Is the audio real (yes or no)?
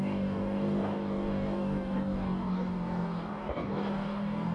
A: no